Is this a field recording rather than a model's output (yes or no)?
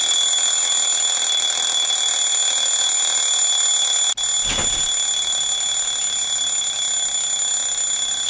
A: yes